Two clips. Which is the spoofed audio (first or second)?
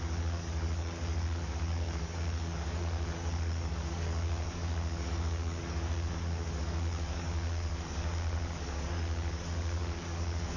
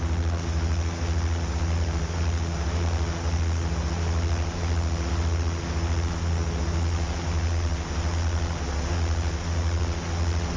first